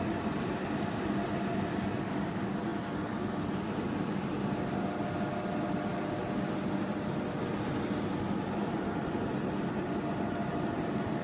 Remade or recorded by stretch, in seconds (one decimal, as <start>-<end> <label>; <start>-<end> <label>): 0.0-11.2 recorded